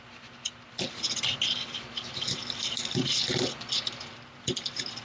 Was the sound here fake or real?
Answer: real